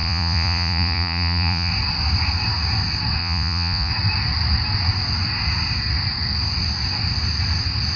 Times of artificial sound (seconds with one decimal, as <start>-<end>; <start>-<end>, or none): 0.0-1.7; 3.2-3.9